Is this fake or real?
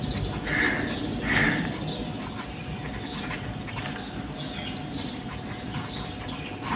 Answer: real